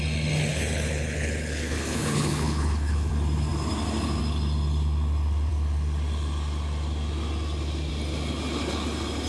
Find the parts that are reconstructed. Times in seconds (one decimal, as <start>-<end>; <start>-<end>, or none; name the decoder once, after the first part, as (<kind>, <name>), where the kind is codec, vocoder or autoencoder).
0.5-3.1 (codec, HILCodec)